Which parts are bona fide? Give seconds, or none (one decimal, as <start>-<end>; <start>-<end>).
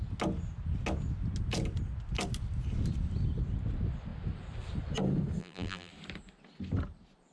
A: 0.0-5.4; 5.9-7.3